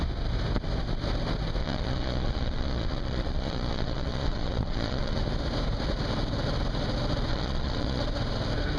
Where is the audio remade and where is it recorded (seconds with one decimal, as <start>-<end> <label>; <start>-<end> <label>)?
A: 0.0-1.6 recorded; 1.6-5.2 remade; 5.2-7.3 recorded; 7.3-8.0 remade; 8.0-8.8 recorded